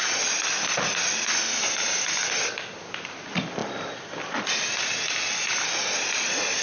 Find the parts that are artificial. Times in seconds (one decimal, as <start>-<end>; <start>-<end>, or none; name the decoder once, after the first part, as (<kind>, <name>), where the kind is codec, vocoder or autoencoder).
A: none